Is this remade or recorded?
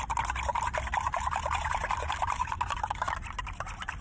recorded